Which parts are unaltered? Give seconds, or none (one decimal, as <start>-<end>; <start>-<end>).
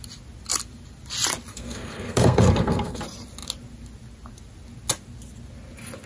0.0-1.5; 3.0-6.1